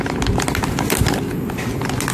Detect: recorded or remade recorded